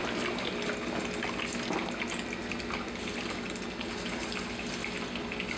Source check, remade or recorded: recorded